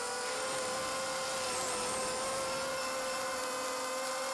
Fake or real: real